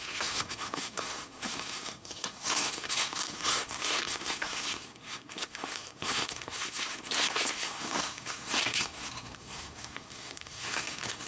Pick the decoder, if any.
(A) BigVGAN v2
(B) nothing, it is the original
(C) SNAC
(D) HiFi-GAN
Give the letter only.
C